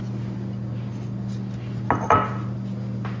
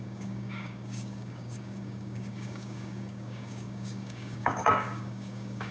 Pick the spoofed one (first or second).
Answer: second